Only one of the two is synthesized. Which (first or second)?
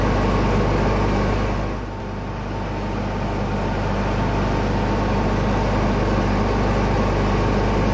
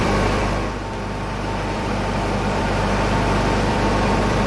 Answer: second